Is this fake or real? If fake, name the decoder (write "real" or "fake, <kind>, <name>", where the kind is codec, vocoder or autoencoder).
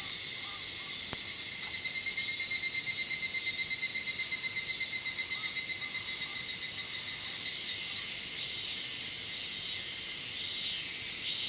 real